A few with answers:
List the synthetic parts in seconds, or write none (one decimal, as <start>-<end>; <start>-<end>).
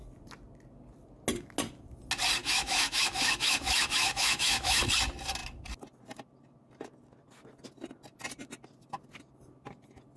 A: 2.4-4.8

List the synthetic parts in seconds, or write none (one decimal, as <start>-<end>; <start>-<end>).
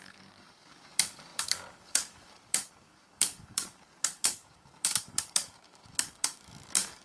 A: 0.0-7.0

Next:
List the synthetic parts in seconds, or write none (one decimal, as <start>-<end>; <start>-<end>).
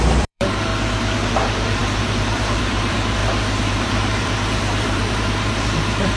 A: 0.0-0.7; 1.3-6.2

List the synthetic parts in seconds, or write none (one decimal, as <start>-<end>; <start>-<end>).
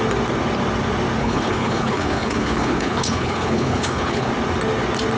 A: 1.2-4.3